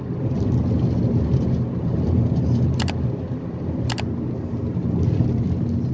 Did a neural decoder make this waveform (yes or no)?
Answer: no